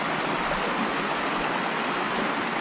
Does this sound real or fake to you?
real